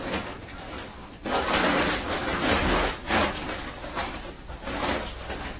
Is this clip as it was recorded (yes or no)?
yes